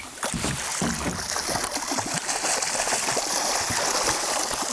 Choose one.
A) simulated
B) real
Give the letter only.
B